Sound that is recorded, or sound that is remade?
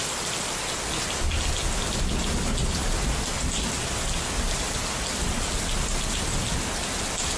recorded